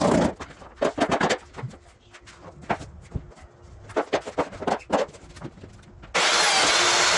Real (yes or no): yes